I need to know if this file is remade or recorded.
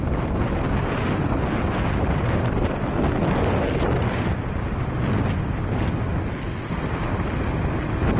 recorded